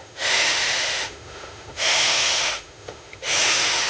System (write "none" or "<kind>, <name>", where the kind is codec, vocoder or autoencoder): autoencoder, DAC-VAE